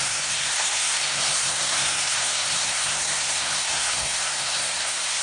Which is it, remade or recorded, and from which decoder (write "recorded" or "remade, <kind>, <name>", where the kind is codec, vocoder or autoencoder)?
remade, codec, SNAC